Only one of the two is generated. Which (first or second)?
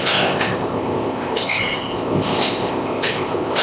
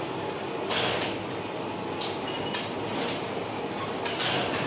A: first